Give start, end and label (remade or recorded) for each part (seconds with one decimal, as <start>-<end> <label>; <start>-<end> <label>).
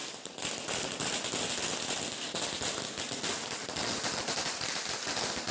0.0-5.5 recorded